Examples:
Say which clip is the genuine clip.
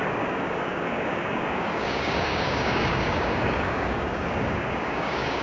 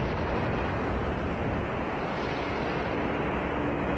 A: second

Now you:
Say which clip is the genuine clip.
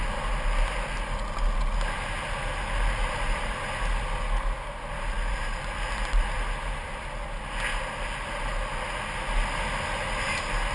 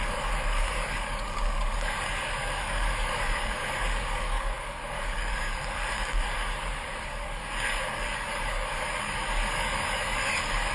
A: first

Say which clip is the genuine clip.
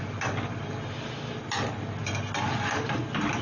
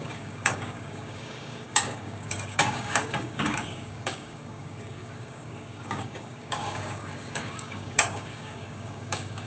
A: first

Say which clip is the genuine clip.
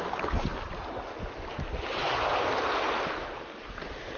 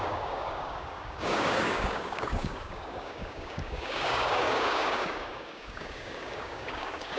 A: first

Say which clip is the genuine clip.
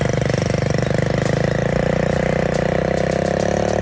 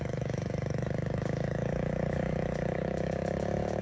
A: first